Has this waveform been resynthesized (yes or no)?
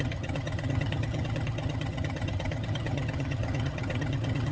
yes